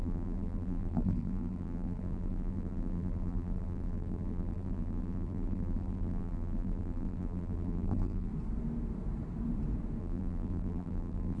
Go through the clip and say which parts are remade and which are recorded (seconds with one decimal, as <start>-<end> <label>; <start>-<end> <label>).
0.0-8.3 remade; 8.3-10.0 recorded; 10.0-11.4 remade